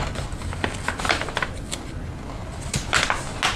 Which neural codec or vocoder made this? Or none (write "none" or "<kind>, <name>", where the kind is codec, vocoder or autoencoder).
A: none